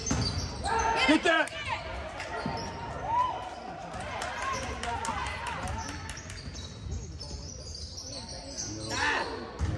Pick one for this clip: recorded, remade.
recorded